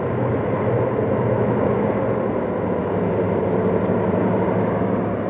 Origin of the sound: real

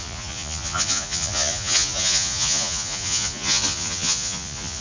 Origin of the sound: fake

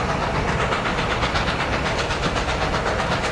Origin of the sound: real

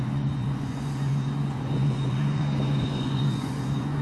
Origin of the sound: fake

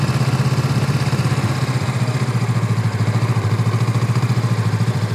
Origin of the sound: real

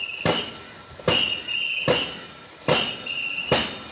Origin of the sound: real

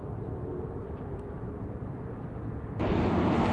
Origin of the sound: real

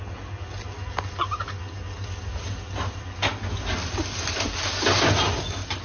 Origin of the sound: real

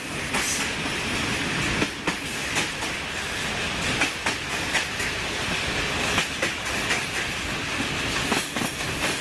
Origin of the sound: real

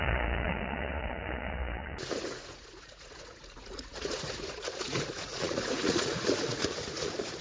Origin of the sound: fake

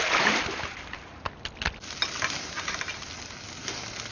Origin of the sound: real